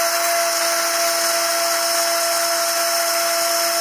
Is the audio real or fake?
real